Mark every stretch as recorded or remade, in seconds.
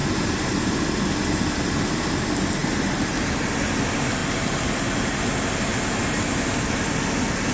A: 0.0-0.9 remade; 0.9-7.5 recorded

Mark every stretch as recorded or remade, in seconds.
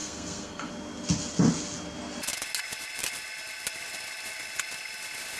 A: 0.0-0.7 remade; 0.7-5.4 recorded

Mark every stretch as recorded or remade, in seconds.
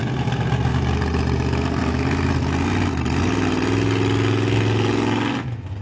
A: 0.0-5.8 recorded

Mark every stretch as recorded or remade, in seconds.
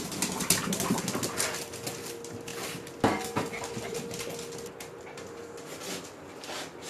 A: 0.0-6.9 recorded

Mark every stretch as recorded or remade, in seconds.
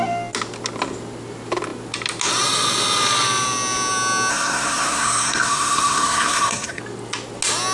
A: 0.0-4.3 recorded; 4.3-6.8 remade; 6.8-7.7 recorded